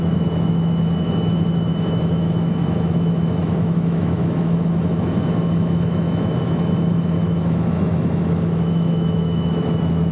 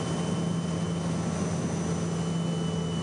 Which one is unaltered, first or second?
second